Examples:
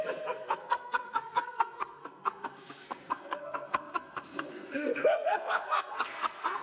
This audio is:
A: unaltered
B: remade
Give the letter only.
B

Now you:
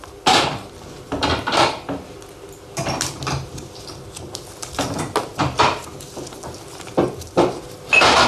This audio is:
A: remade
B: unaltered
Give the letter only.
B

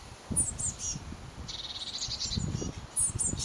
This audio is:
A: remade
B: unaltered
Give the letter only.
B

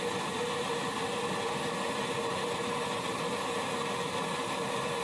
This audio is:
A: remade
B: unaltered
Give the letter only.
B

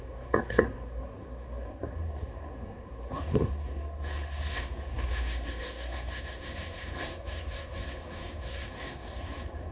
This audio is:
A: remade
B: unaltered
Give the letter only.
A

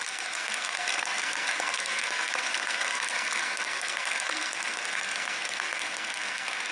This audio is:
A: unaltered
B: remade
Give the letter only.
B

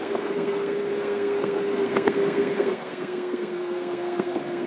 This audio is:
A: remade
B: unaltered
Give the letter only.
A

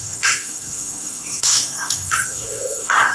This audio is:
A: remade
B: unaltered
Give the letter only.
A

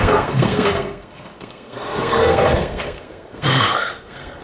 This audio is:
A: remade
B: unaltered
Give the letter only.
A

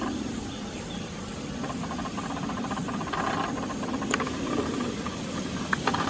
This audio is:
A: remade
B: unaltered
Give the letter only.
B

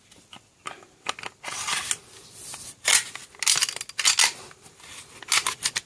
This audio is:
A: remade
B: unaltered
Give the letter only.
B